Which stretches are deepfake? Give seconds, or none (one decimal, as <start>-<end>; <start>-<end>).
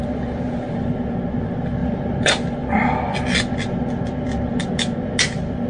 none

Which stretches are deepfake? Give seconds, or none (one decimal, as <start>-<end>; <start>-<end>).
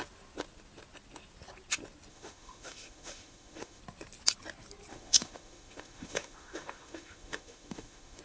2.1-3.8; 4.9-8.2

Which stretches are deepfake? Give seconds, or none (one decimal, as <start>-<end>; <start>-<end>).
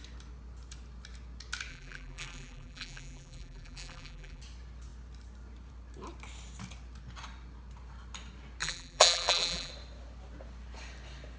1.7-4.4; 8.6-9.7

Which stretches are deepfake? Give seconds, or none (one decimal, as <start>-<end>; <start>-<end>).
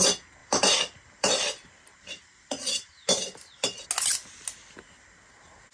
0.4-3.0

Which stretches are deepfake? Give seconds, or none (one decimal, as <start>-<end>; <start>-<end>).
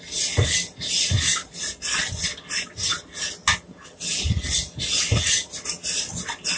none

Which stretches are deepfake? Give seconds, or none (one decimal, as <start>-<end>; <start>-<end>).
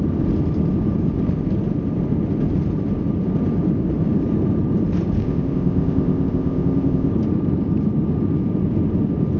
5.2-7.1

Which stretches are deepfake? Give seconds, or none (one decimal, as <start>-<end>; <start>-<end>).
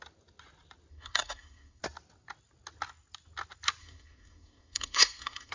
0.9-1.8; 3.8-5.5